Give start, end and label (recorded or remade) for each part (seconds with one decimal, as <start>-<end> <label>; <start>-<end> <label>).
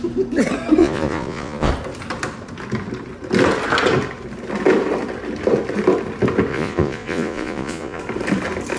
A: 0.0-0.8 recorded; 0.8-1.7 remade; 1.7-6.5 recorded; 6.5-8.0 remade; 8.0-8.8 recorded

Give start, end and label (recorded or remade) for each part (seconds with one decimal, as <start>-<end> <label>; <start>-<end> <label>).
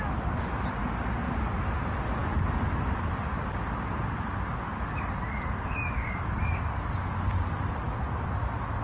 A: 0.0-8.8 recorded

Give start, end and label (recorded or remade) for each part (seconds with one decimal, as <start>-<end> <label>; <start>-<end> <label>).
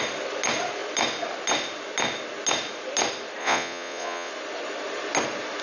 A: 0.0-3.4 recorded; 3.4-4.3 remade; 4.3-5.6 recorded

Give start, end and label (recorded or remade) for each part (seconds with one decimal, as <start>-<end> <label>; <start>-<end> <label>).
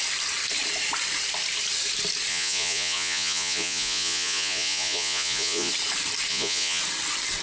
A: 0.0-2.3 recorded; 2.3-5.7 remade; 5.7-6.3 recorded; 6.3-6.8 remade; 6.8-7.4 recorded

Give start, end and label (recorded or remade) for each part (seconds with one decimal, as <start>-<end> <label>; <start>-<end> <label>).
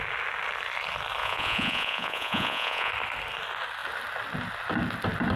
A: 0.0-1.2 recorded; 1.2-2.9 remade; 2.9-5.4 recorded